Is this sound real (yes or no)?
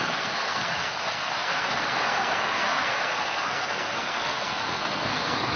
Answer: no